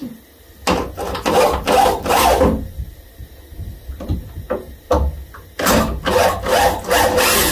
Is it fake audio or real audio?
real